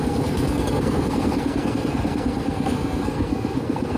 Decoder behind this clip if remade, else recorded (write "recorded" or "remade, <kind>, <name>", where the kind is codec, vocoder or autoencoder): remade, codec, SNAC